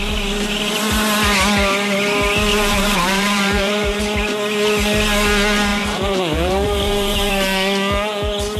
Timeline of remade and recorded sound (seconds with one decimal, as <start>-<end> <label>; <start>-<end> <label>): 0.0-2.5 recorded; 2.5-4.0 remade; 4.0-5.7 recorded; 5.7-7.3 remade; 7.3-8.6 recorded